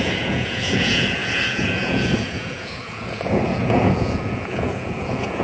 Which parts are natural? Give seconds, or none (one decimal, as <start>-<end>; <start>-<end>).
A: none